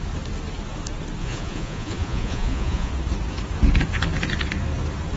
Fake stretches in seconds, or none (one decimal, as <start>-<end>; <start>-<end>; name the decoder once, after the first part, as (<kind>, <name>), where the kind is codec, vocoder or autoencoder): 1.2-2.9 (vocoder, Vocos)